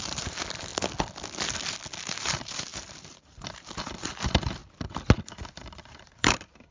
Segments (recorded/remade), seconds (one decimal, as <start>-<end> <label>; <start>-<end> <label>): 0.0-0.7 remade; 0.7-2.0 recorded; 2.0-4.6 remade; 4.6-5.9 recorded; 5.9-6.7 remade